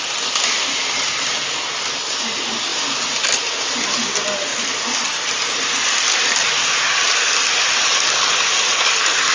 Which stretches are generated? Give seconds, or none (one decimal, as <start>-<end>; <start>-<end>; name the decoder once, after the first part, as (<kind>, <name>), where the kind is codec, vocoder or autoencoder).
none